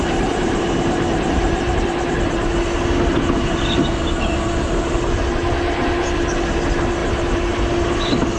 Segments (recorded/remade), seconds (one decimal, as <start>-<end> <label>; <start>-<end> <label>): 0.0-1.8 remade; 1.8-8.4 recorded